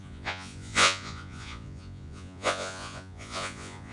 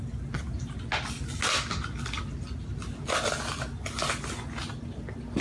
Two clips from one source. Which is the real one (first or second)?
second